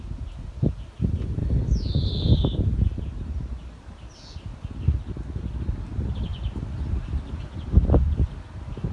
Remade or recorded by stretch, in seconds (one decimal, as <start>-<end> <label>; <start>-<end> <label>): 0.0-8.9 recorded